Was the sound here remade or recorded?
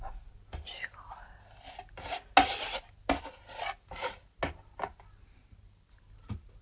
recorded